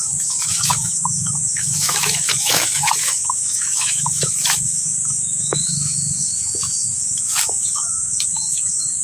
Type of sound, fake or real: fake